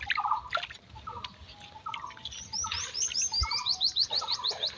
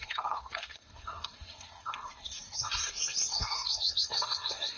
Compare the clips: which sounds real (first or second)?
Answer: first